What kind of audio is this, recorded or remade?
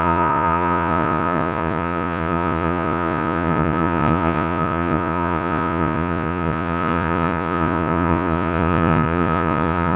remade